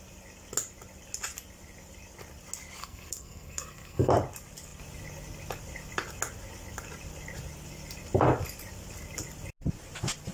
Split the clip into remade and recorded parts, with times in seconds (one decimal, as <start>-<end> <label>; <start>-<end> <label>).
0.0-2.8 recorded; 2.8-4.1 remade; 4.1-10.3 recorded